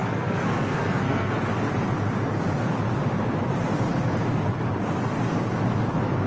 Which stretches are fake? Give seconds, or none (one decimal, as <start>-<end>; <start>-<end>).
0.0-1.3